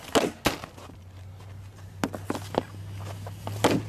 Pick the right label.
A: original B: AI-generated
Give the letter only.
A